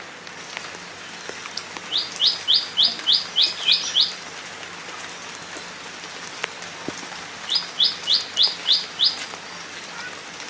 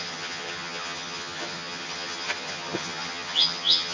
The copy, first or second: second